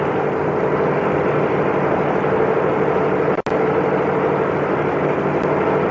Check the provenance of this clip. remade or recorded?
recorded